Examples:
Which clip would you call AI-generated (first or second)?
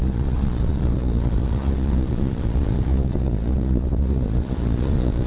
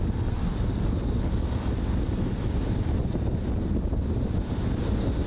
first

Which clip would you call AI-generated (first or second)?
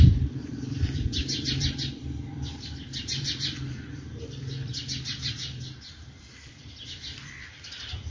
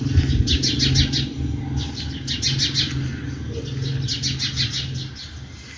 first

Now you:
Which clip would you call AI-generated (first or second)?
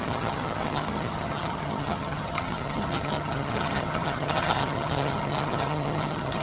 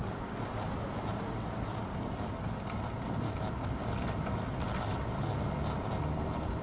first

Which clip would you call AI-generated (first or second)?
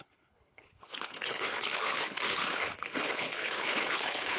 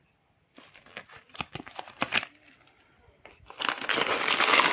first